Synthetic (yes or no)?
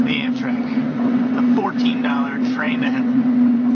yes